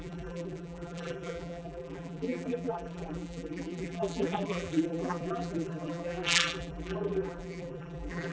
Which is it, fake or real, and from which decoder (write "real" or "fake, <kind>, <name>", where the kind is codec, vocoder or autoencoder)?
fake, vocoder, BigVGAN v2